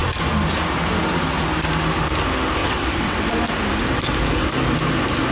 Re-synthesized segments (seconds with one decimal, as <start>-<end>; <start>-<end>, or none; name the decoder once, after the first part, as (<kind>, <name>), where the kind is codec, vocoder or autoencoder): 2.6-3.3 (vocoder, WaveNeXt)